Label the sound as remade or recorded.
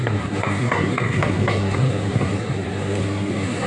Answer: remade